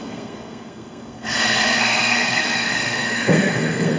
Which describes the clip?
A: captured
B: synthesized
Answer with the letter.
B